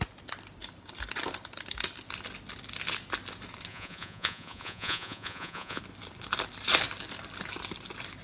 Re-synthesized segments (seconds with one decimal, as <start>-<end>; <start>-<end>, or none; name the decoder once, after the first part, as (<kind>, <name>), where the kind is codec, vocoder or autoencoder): 3.7-5.8 (vocoder, Vocos)

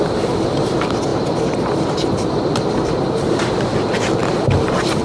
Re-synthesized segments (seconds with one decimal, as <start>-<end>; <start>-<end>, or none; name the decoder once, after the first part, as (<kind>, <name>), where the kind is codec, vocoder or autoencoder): none

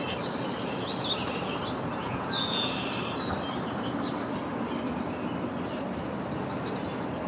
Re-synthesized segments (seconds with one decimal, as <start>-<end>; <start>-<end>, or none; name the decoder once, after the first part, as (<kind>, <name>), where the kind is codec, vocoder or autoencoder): 2.0-2.7 (vocoder, Vocos)